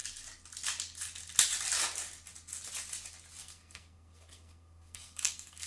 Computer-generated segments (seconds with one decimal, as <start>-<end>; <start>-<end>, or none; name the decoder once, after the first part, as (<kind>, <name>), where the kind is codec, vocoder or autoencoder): 3.4-5.7 (codec, SNAC)